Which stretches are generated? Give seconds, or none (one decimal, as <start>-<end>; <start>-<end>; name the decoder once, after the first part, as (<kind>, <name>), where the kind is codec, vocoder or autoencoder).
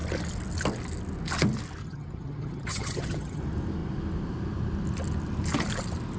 1.8-3.4 (vocoder, HiFi-GAN)